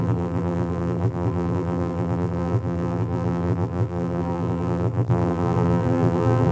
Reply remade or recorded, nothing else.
remade